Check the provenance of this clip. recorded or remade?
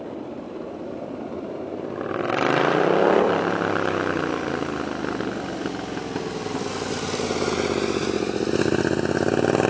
recorded